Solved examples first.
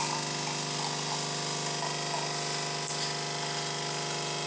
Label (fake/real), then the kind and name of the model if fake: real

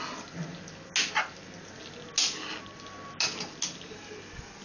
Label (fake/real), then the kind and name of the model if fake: real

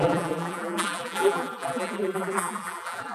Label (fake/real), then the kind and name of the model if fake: fake, vocoder, BigVGAN v2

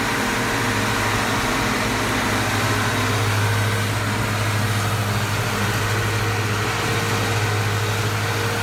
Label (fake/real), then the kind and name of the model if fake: real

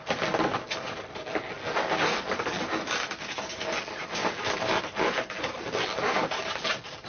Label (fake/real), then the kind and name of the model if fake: real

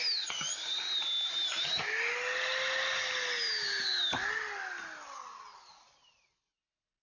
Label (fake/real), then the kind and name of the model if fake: real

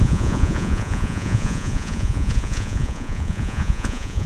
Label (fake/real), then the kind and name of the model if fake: fake, vocoder, Vocos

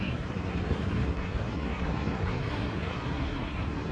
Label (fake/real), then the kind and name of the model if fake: fake, codec, SNAC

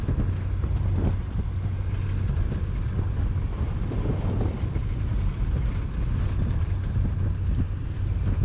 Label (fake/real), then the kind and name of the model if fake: real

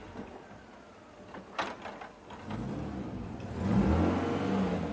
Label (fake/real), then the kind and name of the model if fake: real